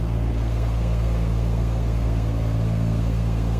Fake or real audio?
fake